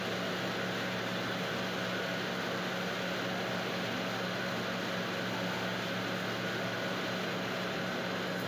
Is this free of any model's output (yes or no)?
yes